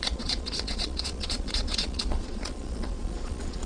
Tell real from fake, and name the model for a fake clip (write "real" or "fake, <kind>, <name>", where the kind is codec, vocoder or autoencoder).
fake, vocoder, Vocos